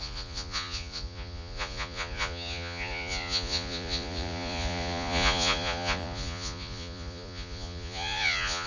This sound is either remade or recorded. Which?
remade